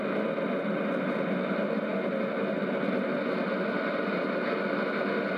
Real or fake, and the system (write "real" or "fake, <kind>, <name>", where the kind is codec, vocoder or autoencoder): real